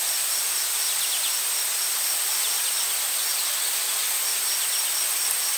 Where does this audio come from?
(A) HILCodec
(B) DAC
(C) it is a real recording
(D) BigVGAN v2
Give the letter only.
D